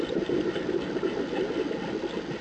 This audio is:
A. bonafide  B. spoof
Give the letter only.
A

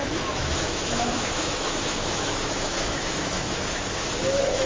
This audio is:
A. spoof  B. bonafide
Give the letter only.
A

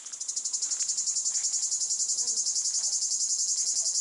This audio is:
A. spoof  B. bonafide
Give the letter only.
B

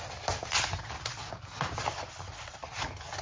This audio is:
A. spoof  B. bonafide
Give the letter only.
B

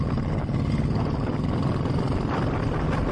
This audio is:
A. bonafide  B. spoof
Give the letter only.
A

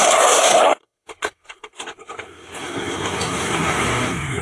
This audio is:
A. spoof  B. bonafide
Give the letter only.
A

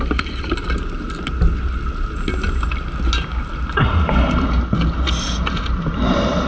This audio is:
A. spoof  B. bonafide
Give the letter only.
B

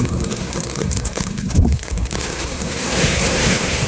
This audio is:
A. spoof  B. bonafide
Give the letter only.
A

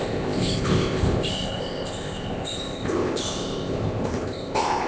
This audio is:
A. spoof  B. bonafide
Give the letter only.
A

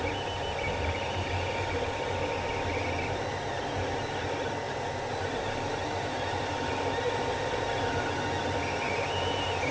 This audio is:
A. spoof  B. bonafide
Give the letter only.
B